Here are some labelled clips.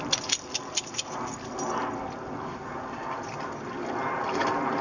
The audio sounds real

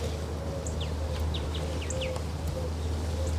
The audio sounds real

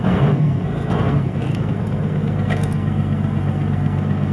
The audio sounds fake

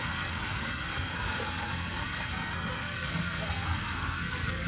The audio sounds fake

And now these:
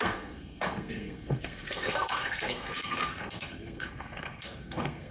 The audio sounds fake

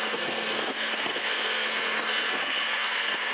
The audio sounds fake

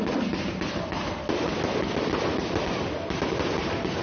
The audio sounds real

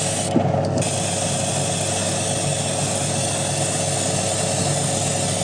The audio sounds real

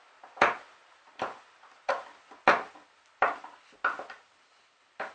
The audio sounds real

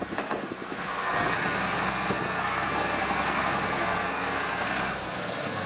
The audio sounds fake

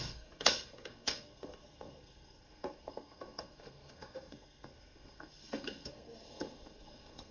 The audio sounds fake